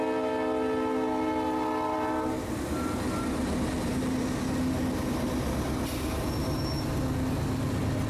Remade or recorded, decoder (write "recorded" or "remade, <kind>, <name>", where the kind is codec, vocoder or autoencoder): recorded